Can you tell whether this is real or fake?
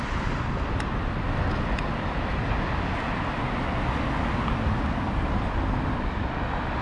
real